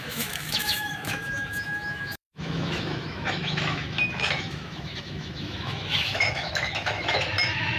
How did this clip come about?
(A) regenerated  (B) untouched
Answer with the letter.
A